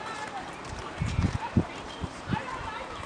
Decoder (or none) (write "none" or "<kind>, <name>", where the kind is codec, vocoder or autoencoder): vocoder, BigVGAN v2